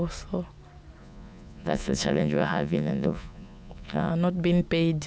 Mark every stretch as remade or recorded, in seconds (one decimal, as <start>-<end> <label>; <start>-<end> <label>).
0.0-1.0 recorded; 1.0-4.1 remade; 4.1-5.1 recorded